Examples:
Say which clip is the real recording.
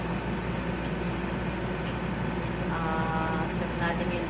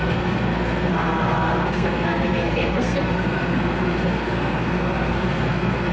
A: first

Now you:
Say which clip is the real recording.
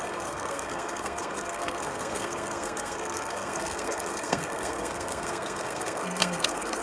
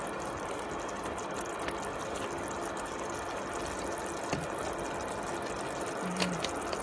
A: second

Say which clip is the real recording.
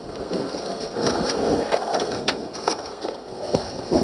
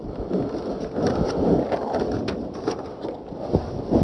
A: second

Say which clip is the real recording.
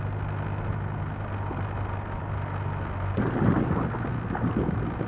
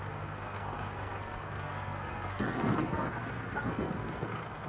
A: first